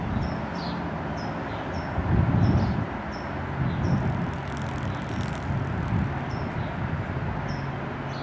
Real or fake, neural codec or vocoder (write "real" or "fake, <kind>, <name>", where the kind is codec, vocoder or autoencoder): real